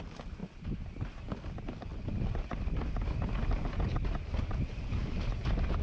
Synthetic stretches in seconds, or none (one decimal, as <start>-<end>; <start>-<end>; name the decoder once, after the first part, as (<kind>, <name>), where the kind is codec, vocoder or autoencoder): none

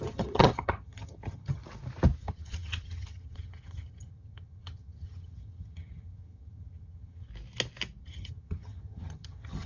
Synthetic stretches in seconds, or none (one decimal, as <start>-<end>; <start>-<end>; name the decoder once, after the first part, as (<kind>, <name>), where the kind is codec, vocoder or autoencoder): 0.0-1.6 (vocoder, HiFi-GAN); 2.2-7.3; 8.0-9.7

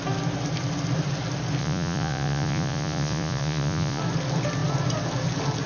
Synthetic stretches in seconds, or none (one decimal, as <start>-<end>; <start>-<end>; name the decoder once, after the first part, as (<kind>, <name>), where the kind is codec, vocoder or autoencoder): 1.6-4.0 (vocoder, Vocos)

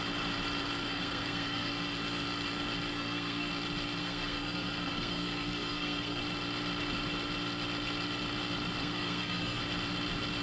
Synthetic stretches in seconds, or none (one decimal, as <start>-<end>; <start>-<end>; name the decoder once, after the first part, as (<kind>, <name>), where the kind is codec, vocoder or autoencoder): 0.8-1.7 (codec, SNAC); 2.9-3.5; 4.0-6.2; 8.8-9.6

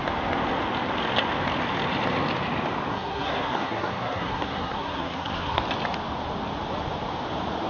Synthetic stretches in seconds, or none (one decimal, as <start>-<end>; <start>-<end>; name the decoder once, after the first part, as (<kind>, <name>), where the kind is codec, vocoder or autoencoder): 2.9-5.6 (codec, SNAC)